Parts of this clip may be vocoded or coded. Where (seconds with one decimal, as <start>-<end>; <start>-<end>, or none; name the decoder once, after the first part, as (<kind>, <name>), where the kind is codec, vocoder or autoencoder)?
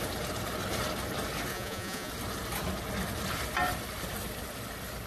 1.5-2.1 (vocoder, Vocos)